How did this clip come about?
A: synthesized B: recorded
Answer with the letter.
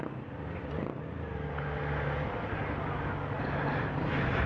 B